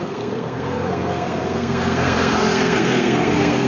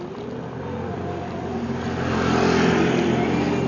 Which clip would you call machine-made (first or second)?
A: first